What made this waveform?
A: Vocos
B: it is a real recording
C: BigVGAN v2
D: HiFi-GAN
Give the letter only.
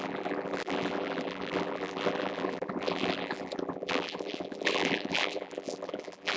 C